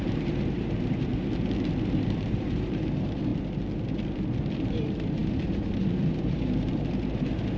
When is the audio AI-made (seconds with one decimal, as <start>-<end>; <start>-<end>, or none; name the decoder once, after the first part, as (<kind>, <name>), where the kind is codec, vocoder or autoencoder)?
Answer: 0.0-1.1 (vocoder, BigVGAN v2); 1.8-3.3; 4.5-7.6